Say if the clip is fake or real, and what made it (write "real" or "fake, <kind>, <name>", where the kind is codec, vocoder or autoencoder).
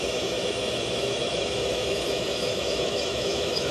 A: fake, autoencoder, DAC-VAE